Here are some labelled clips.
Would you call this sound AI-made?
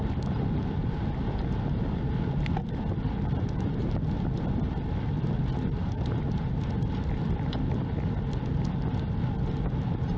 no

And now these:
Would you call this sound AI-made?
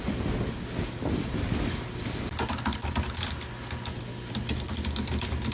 no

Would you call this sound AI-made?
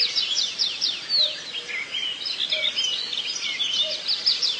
no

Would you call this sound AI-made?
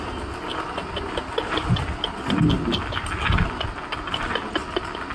no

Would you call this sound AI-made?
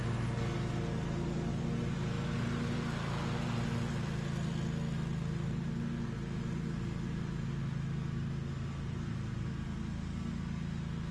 no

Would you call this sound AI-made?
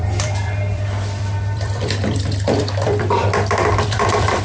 yes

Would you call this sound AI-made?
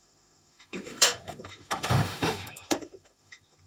yes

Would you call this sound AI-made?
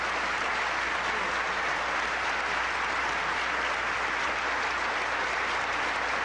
no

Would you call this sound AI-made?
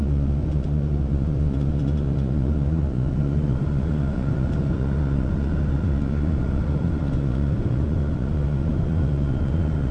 yes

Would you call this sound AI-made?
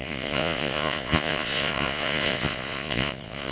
yes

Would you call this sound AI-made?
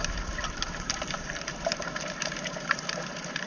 yes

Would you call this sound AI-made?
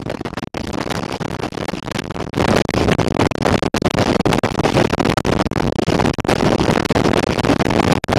no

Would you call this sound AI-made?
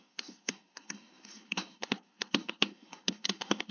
yes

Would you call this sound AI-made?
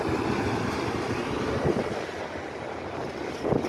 no